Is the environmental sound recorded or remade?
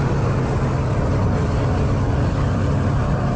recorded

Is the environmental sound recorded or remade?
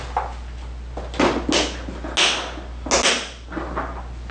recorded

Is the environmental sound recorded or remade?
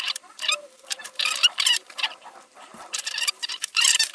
remade